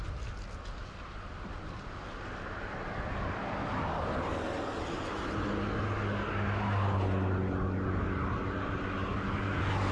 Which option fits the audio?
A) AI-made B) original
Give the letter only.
B